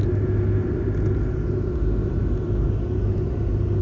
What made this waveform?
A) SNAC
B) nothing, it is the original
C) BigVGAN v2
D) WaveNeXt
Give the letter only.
B